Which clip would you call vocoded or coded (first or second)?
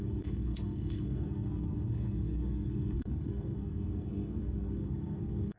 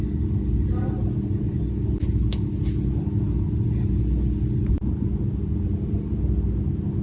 first